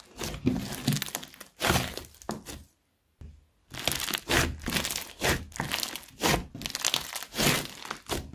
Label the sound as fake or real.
real